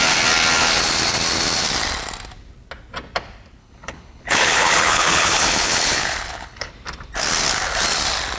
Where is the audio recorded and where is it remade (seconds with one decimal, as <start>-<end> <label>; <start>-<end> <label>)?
0.0-3.6 recorded; 3.6-6.7 remade; 6.7-8.4 recorded